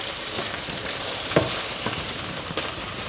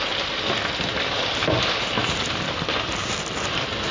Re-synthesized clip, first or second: first